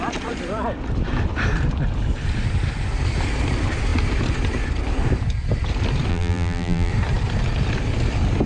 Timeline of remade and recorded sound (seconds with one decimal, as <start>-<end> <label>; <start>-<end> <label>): 0.0-6.1 recorded; 6.1-6.9 remade; 6.9-8.5 recorded